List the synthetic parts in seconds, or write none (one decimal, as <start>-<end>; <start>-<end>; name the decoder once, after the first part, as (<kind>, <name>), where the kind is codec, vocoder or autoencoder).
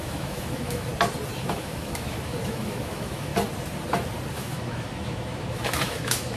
0.0-0.9 (autoencoder, DAC-VAE); 1.4-3.3; 4.3-6.4